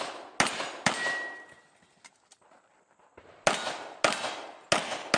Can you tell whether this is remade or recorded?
recorded